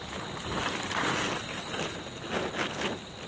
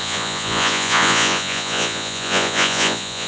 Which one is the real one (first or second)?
first